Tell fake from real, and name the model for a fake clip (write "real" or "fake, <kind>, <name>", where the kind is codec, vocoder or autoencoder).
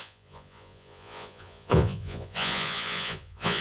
fake, vocoder, Vocos